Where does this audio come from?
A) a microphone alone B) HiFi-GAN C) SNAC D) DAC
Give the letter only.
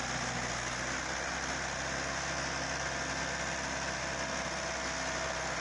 A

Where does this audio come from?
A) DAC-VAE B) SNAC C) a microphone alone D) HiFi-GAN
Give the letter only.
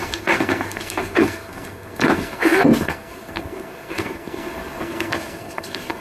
B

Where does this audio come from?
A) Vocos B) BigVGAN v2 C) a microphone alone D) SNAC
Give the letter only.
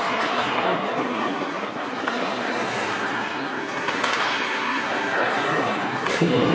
D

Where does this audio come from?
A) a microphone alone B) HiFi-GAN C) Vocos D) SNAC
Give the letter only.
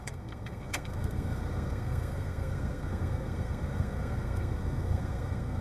D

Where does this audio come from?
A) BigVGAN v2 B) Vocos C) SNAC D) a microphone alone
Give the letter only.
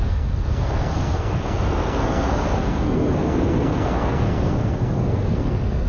C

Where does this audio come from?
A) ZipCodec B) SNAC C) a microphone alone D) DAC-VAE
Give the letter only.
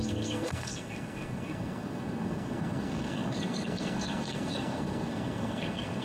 B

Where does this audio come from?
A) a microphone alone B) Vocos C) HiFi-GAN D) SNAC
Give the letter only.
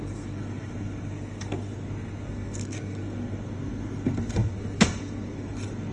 D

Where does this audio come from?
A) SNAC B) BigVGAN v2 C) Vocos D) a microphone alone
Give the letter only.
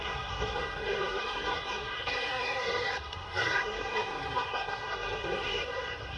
A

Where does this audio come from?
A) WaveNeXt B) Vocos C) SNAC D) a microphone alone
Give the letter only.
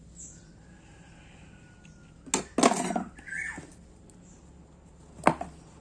D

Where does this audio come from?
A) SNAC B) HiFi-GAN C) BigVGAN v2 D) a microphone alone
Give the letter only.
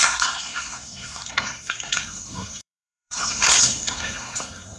A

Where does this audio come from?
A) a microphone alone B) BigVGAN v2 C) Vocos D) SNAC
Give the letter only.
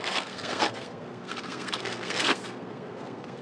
D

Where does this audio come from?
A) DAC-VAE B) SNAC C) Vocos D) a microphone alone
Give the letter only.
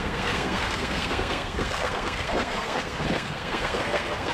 B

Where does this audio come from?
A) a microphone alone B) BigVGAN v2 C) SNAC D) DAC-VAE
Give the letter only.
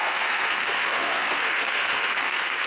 C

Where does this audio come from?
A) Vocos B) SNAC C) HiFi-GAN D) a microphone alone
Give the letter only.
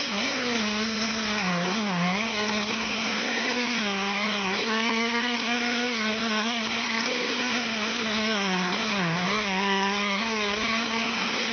B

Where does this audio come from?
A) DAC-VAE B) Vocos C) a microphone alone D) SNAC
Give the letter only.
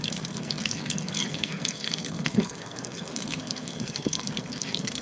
D